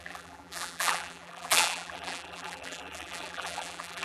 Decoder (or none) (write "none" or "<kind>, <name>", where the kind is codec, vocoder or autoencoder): vocoder, BigVGAN v2